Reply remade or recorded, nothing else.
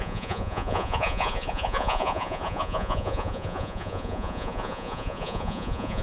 remade